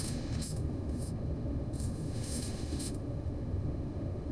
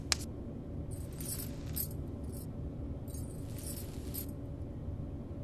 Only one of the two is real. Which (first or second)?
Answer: second